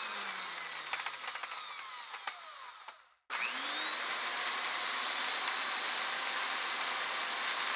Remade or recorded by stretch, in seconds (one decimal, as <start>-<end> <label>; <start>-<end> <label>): 0.0-3.9 recorded; 3.9-4.9 remade; 4.9-7.8 recorded